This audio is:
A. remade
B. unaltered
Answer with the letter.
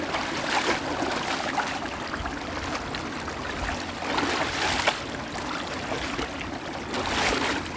B